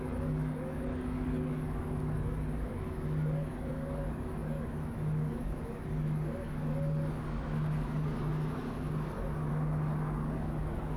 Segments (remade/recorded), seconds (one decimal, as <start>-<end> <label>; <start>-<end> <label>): 0.0-11.0 remade